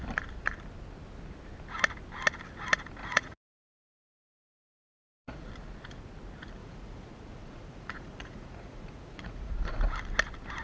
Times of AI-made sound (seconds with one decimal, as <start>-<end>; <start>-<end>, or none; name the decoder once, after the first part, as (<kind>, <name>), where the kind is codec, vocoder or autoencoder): 3.0-5.5 (vocoder, Vocos); 6.6-9.5